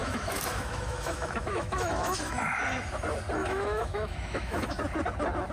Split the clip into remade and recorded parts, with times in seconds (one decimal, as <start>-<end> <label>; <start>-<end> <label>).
0.0-2.6 remade; 2.6-3.4 recorded; 3.4-4.8 remade; 4.8-5.5 recorded